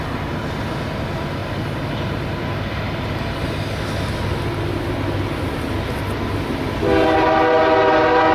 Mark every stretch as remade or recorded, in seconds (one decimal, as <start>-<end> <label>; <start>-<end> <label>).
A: 0.0-8.3 recorded